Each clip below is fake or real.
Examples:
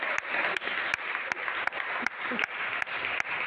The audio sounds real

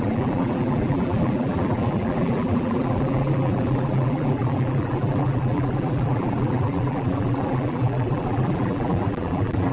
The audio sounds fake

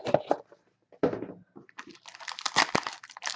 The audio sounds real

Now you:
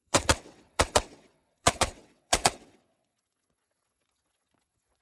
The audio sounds fake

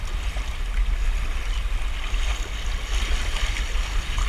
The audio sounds real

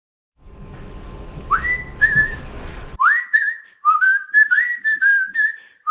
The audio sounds fake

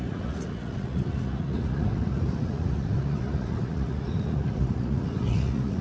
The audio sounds fake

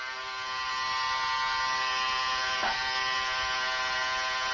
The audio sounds real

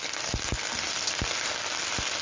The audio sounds real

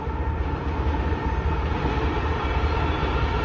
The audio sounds real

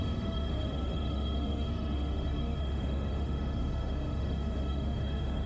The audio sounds fake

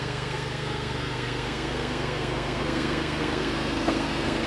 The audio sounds fake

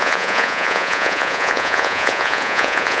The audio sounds fake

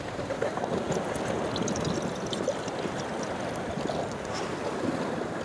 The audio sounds real